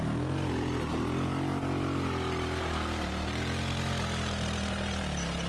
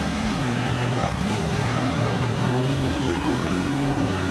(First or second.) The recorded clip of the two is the first